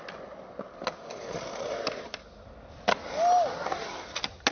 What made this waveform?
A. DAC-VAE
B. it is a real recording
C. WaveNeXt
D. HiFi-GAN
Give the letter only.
B